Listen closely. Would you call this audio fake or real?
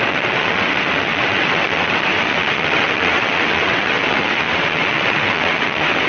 fake